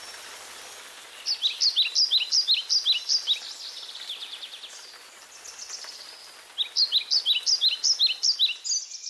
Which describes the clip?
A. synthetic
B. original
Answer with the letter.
B